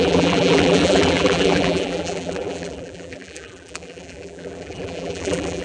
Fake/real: fake